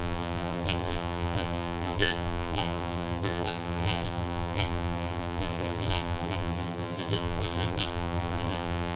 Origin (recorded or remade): remade